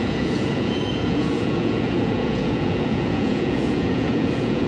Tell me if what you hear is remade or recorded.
remade